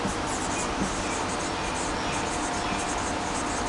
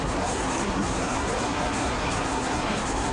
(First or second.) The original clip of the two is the first